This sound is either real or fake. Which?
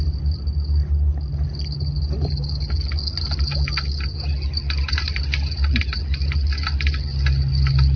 real